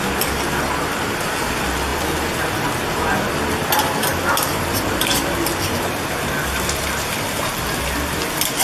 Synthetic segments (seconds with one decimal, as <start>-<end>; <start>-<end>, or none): 4.1-7.6